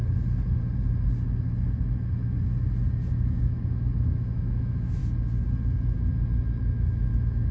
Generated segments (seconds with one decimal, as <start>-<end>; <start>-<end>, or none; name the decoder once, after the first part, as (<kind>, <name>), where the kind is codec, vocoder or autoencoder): 3.1-5.0 (autoencoder, DAC-VAE); 6.6-7.5